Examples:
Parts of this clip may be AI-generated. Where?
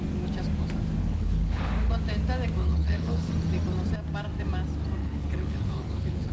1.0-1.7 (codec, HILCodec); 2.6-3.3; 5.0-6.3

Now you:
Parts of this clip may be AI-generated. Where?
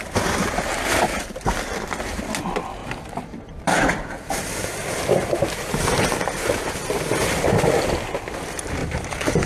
0.7-1.5 (vocoder, BigVGAN v2); 2.8-7.7; 8.8-9.5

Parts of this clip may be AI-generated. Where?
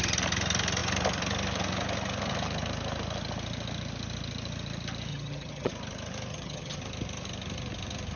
5.1-5.7 (vocoder, HiFi-GAN); 6.3-6.8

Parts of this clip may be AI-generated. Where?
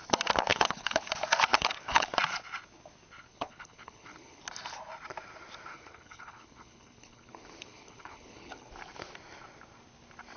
0.5-1.1 (codec, HILCodec); 1.5-2.1; 3.3-4.4; 5.7-8.7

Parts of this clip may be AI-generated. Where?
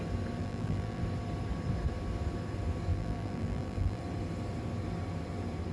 0.4-1.0 (vocoder, BigVGAN v2); 2.9-4.0